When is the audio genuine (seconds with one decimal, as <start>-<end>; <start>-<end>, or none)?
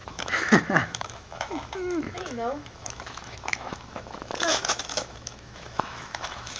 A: none